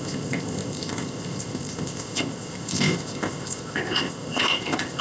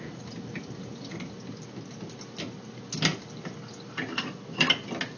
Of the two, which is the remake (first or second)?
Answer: first